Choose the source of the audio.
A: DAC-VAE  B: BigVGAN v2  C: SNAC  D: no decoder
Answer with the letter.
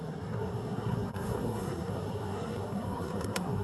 C